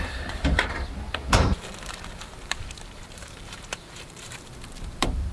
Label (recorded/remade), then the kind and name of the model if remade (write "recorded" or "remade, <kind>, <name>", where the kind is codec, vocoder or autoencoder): remade, vocoder, BigVGAN v2